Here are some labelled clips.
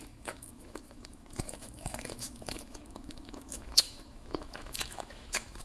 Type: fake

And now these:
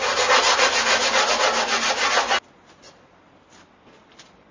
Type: real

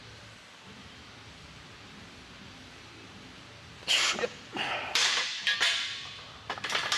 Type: fake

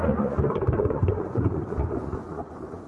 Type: fake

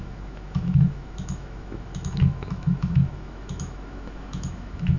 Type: fake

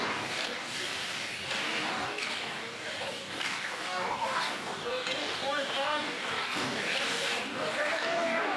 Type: fake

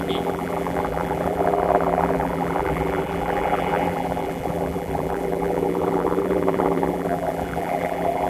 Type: fake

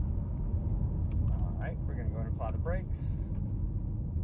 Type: real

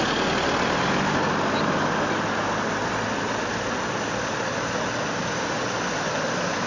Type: real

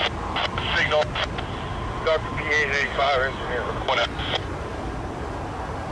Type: real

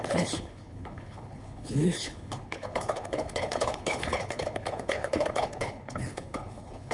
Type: fake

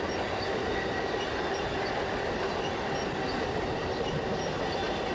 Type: real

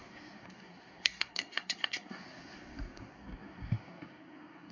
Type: fake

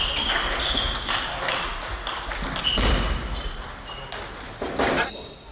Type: real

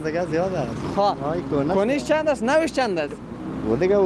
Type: real